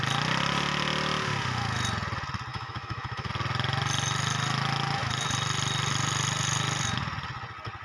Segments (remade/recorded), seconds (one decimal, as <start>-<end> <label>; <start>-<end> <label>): 0.0-2.5 recorded; 2.5-3.3 remade; 3.3-7.8 recorded